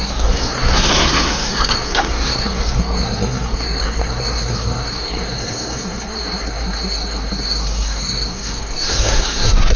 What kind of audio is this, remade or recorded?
remade